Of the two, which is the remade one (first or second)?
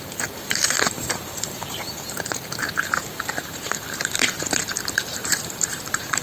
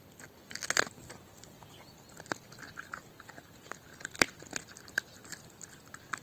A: first